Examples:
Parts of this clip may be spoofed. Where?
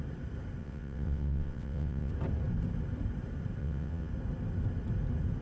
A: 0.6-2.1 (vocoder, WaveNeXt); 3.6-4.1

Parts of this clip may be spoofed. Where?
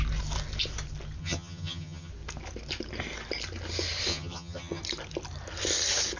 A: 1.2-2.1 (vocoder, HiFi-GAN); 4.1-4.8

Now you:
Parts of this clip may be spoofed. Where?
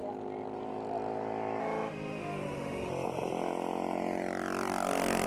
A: 1.6-2.9 (autoencoder, DAC-VAE)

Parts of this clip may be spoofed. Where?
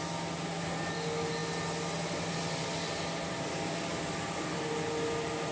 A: none